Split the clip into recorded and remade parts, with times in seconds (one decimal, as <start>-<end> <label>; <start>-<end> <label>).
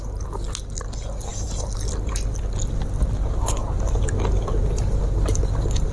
0.0-5.9 recorded